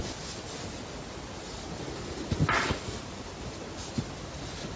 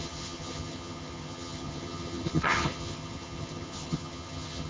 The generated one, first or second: second